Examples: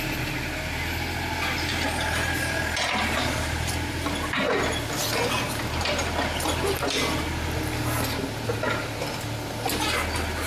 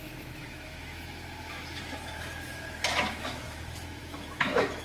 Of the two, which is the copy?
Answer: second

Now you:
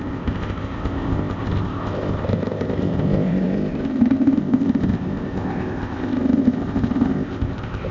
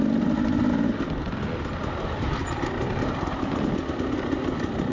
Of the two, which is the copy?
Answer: first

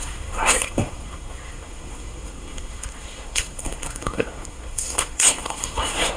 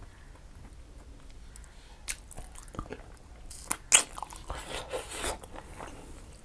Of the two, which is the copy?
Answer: first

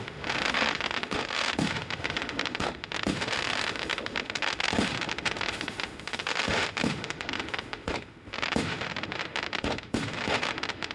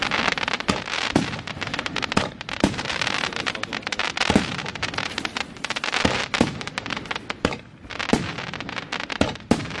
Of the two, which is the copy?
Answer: first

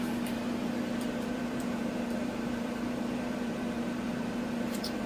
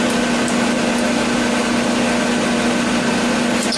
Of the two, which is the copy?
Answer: first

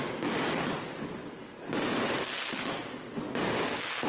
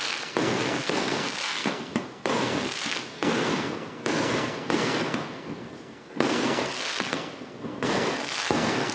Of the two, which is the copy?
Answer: second